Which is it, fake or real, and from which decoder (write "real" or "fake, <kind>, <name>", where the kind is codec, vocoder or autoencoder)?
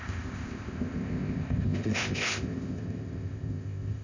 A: fake, codec, ZipCodec